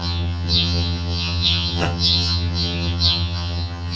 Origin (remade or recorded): remade